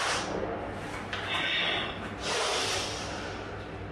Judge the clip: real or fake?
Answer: real